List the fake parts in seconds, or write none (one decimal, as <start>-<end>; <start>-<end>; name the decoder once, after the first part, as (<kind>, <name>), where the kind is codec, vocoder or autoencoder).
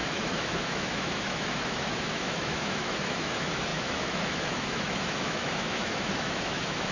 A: 0.0-6.9 (autoencoder, DAC-VAE)